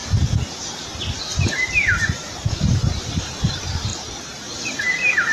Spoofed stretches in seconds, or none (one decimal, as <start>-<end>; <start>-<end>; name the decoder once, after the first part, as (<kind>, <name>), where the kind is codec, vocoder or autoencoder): 3.2-3.9 (vocoder, BigVGAN v2); 4.6-5.3